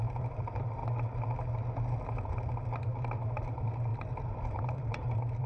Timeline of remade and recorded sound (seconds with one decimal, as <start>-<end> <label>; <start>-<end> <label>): 0.0-0.8 remade; 0.8-2.8 recorded; 2.8-5.5 remade